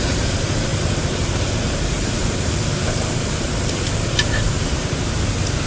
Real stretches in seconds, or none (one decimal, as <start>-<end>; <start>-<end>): none